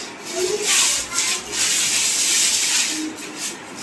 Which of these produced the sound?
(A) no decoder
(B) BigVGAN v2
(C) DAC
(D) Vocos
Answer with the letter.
A